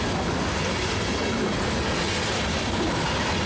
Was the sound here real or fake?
real